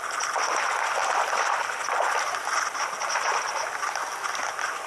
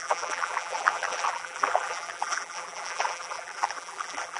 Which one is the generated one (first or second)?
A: second